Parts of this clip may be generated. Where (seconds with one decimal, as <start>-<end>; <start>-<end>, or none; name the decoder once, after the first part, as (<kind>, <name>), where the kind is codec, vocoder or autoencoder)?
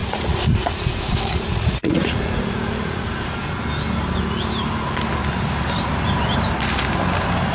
0.0-3.1 (vocoder, Vocos)